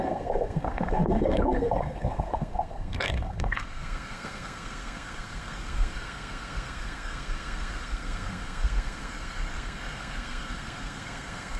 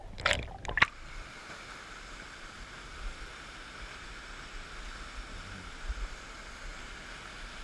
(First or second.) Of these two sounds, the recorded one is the second